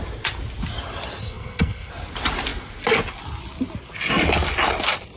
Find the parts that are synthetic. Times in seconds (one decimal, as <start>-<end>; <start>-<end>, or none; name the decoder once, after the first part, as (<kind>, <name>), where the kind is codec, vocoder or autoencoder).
1.2-1.9 (codec, SNAC)